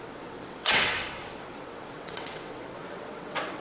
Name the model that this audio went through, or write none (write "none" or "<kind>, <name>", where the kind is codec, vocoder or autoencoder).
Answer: vocoder, WaveNeXt